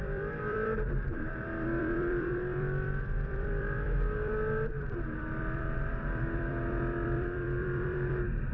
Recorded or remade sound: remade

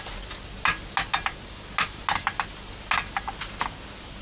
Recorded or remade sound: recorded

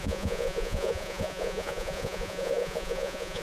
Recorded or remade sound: remade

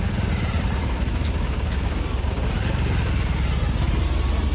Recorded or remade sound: recorded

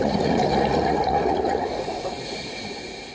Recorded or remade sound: remade